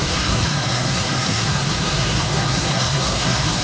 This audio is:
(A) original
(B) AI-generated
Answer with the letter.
B